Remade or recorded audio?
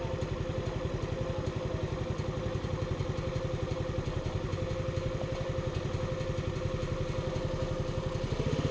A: recorded